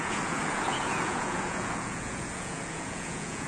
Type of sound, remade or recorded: remade